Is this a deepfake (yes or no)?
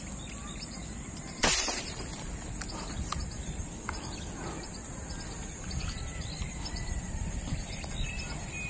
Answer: yes